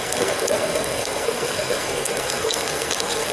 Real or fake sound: fake